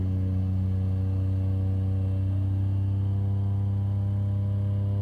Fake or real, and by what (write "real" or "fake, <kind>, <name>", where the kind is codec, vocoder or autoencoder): real